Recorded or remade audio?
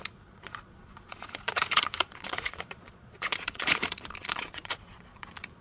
remade